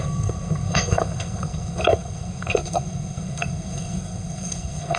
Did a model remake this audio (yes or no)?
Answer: yes